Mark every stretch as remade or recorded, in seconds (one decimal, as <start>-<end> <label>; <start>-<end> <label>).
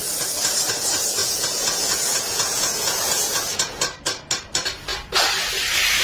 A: 0.0-1.2 recorded; 1.2-3.8 remade; 3.8-6.0 recorded